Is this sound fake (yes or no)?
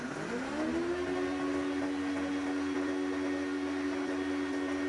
no